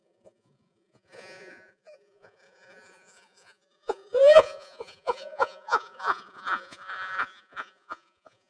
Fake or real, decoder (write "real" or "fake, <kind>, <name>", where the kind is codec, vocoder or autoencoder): fake, vocoder, Vocos